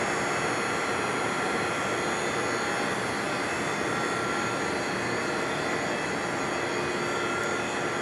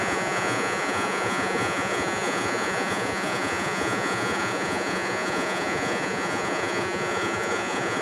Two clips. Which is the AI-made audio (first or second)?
second